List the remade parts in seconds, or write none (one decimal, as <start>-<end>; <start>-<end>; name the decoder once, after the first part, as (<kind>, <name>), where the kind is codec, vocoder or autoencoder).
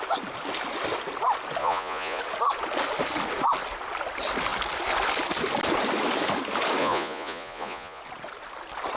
1.6-2.2 (vocoder, Vocos); 6.8-8.0